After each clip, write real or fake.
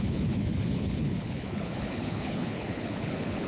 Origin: fake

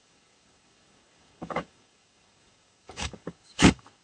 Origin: fake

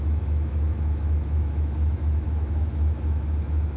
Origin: fake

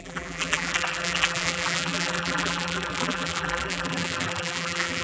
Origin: fake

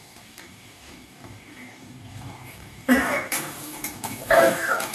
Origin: fake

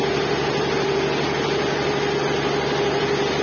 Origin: real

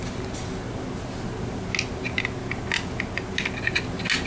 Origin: real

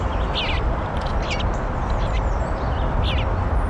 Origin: real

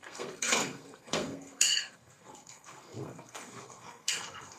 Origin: fake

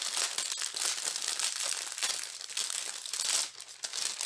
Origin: real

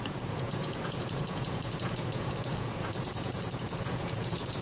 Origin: fake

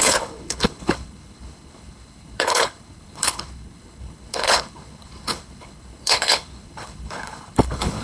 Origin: fake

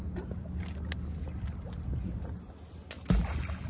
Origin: real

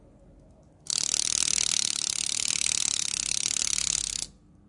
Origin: real